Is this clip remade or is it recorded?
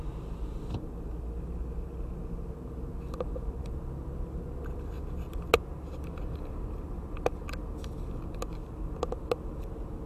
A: recorded